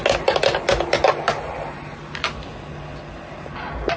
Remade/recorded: recorded